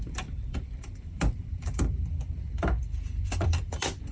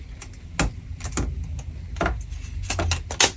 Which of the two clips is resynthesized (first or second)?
first